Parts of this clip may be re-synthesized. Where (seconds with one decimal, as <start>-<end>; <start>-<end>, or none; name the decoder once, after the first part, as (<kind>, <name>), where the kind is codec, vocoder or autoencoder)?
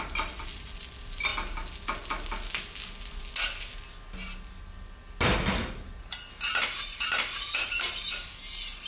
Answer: none